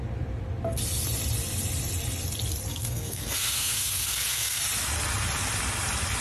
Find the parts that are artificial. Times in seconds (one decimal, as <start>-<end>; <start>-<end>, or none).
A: 2.7-4.6